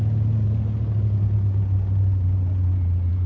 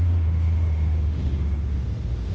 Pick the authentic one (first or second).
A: first